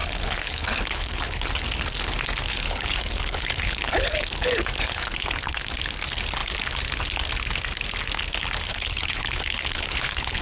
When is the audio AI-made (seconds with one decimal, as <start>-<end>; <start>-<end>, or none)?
0.0-1.5; 2.5-5.7; 8.7-10.4